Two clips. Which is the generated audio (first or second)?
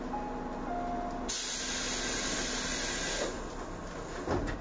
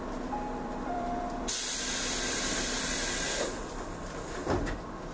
second